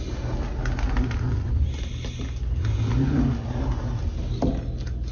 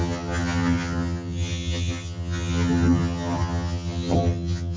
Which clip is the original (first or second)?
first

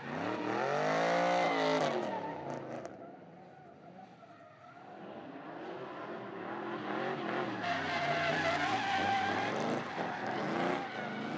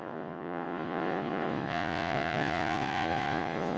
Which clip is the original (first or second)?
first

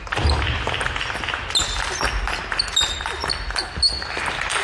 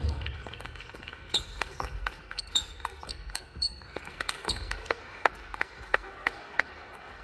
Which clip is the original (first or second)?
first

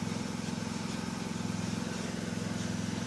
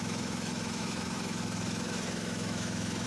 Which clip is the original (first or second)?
first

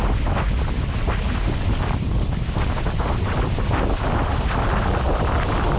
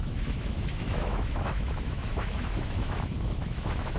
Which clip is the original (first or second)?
first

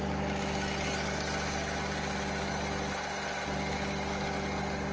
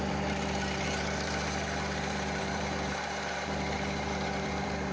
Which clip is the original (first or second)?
first